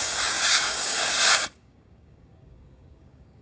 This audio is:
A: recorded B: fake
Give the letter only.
B